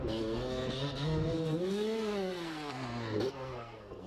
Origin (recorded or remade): remade